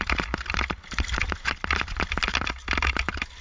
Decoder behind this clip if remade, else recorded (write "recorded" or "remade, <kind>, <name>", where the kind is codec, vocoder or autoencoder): recorded